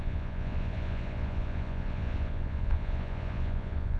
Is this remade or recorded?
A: remade